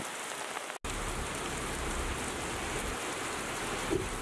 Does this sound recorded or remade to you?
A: recorded